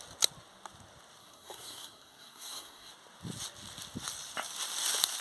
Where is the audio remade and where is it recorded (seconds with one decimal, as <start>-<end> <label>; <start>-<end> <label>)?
0.0-1.2 recorded; 1.2-2.9 remade; 2.9-5.2 recorded